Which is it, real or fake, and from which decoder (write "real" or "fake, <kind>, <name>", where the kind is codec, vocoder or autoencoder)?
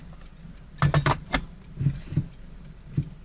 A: real